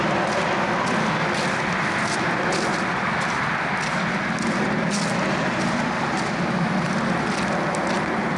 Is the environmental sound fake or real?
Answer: real